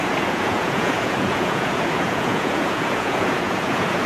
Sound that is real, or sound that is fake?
fake